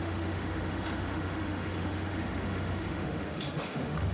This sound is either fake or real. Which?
fake